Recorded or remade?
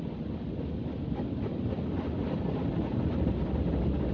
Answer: recorded